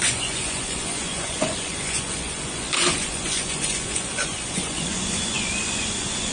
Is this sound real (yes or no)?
no